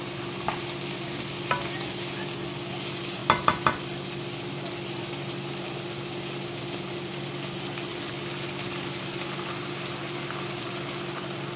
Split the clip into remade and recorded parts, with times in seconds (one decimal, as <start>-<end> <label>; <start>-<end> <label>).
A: 0.0-11.6 recorded